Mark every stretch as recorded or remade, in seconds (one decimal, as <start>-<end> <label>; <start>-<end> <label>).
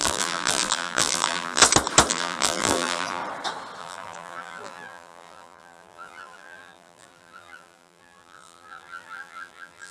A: 0.0-1.6 remade; 1.6-2.1 recorded; 2.1-3.2 remade; 3.2-3.8 recorded; 3.8-9.9 remade